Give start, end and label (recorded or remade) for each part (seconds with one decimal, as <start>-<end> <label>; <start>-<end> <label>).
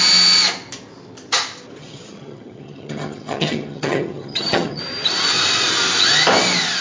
0.0-1.8 recorded; 1.8-4.8 remade; 4.8-6.8 recorded